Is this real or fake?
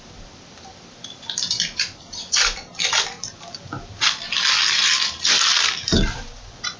fake